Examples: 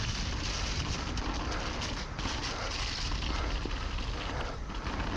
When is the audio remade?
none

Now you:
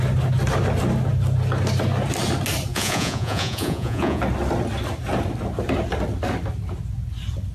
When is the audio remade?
2.7-4.2 (vocoder, Vocos)

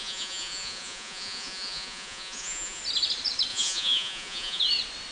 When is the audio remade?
0.0-2.8 (vocoder, Vocos); 3.5-4.6

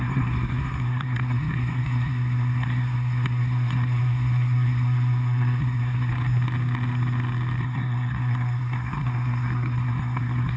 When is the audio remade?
0.0-6.1 (codec, SNAC); 7.6-10.6